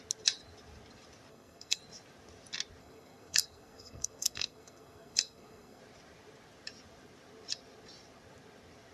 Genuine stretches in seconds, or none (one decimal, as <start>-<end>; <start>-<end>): 0.0-1.3; 1.8-2.8; 5.8-8.9